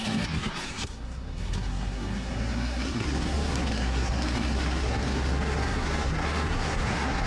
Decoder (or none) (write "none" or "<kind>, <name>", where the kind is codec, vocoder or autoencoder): codec, SNAC